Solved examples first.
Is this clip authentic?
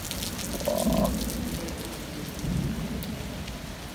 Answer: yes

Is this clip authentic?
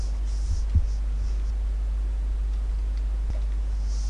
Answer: yes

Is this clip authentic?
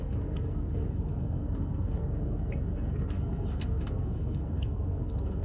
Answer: no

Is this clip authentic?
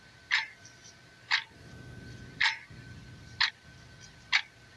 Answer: yes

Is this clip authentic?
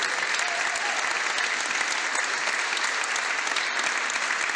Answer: yes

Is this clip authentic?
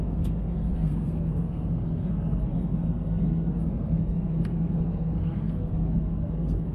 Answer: no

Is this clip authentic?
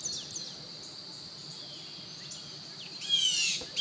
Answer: yes